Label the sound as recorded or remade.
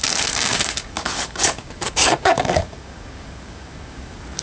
remade